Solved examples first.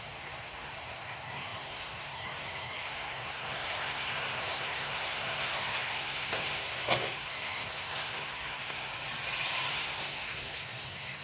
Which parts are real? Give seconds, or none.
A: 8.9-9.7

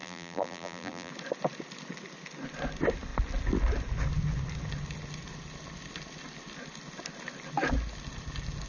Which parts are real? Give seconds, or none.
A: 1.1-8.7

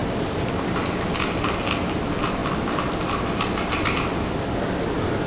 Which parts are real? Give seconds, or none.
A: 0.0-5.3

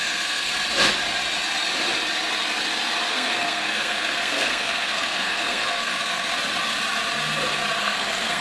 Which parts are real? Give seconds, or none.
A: 0.5-3.1; 6.3-7.8

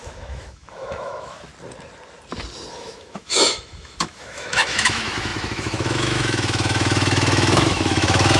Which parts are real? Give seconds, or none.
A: 1.5-2.7

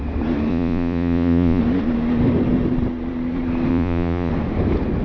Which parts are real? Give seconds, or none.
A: 0.0-0.5; 1.6-3.7; 4.3-5.0